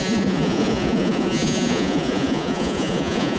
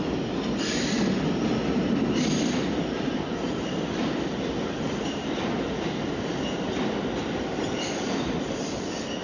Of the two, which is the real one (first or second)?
second